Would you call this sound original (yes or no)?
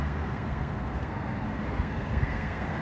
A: no